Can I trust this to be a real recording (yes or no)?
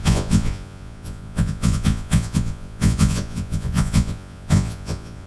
no